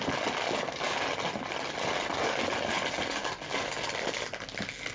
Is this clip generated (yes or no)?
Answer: no